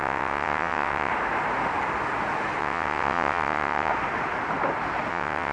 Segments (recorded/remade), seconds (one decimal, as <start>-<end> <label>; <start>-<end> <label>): 0.0-1.1 remade; 1.1-2.6 recorded; 2.6-3.9 remade; 3.9-5.1 recorded; 5.1-5.5 remade